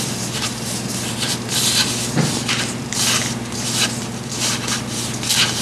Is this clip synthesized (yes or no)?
no